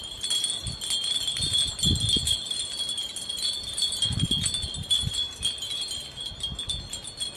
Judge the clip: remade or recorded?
recorded